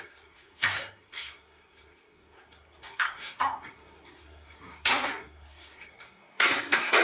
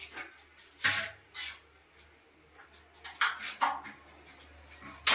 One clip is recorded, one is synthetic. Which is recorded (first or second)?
second